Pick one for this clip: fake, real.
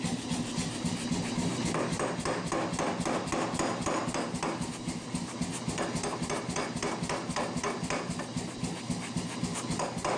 real